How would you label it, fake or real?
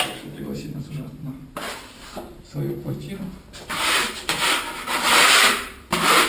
fake